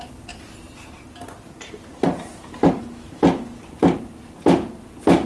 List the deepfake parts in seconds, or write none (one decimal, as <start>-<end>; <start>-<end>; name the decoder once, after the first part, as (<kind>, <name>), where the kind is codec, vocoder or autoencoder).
none